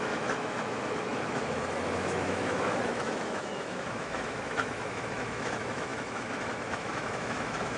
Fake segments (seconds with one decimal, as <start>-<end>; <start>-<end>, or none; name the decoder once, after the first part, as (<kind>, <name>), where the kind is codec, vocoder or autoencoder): 0.0-7.8 (autoencoder, DAC-VAE)